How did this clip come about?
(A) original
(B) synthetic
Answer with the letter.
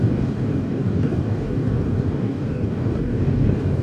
B